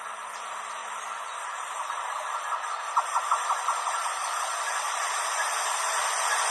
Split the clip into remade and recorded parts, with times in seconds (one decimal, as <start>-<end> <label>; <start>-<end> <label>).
0.0-6.5 recorded